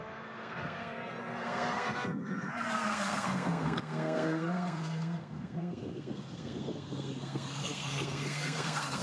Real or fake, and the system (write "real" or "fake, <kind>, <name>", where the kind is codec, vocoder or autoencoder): fake, codec, SNAC